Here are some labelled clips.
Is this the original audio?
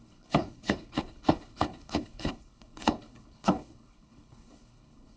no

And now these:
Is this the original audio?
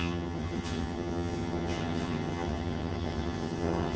no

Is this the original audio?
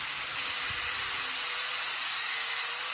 yes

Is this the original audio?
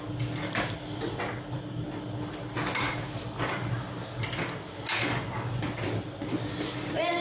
yes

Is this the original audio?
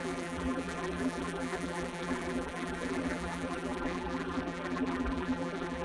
no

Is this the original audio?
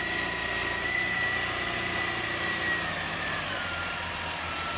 yes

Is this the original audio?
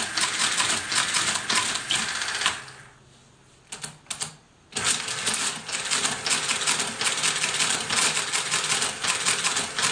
yes